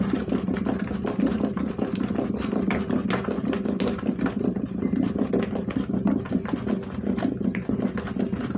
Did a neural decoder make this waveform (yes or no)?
no